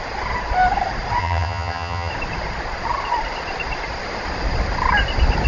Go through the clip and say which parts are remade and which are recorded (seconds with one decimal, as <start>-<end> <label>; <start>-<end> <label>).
0.0-1.2 recorded; 1.2-2.1 remade; 2.1-5.5 recorded